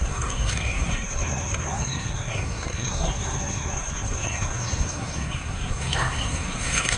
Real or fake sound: fake